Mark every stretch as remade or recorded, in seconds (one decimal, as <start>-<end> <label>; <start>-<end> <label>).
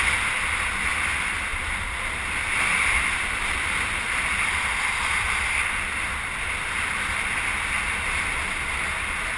0.0-9.4 recorded